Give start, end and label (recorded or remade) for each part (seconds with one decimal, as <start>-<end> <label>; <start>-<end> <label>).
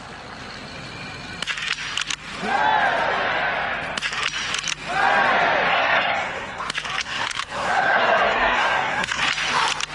0.0-5.7 recorded; 5.7-6.6 remade; 6.6-7.0 recorded; 7.0-9.2 remade; 9.2-9.9 recorded